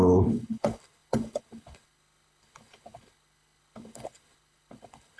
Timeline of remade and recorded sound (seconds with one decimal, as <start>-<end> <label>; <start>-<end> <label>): 0.0-5.2 remade